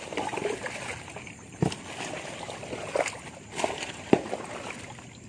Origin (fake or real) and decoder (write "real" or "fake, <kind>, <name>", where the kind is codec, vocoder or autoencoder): real